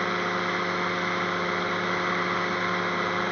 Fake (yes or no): no